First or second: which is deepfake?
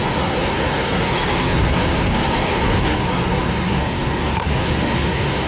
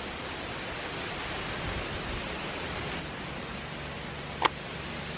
first